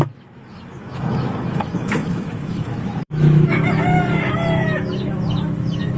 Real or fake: fake